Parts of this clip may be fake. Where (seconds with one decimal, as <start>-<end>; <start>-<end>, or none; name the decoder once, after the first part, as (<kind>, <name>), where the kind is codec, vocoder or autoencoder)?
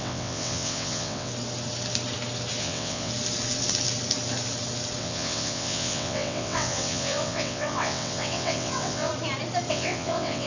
0.0-1.3 (vocoder, WaveNeXt); 2.6-3.1; 5.0-9.1; 9.7-10.5